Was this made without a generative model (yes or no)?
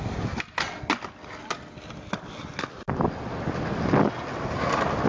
yes